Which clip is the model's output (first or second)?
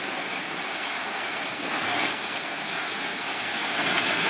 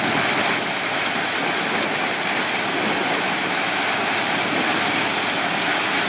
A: first